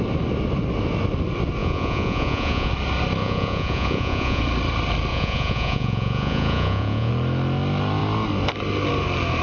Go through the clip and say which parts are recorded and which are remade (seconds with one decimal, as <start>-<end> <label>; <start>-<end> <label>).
0.0-1.6 recorded; 1.6-2.7 remade; 2.7-3.2 recorded; 3.2-4.4 remade; 4.4-5.1 recorded; 5.1-7.1 remade; 7.1-9.4 recorded